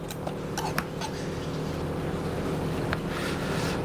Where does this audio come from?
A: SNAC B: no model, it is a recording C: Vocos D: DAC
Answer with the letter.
B